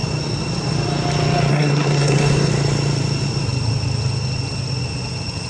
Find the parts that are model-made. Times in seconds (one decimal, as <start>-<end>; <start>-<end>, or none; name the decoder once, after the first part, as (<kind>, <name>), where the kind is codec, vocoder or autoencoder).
1.5-2.5 (codec, SNAC)